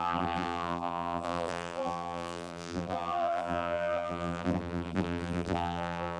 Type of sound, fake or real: fake